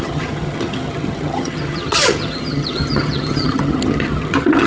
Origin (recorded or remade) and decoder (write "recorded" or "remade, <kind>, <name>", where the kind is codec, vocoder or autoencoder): remade, vocoder, HiFi-GAN